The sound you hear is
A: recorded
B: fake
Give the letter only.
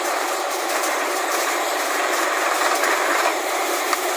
B